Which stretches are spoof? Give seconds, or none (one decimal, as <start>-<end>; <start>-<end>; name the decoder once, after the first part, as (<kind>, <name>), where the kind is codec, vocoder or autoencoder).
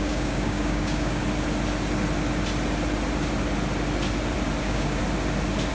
0.0-1.2 (codec, DAC); 4.6-5.0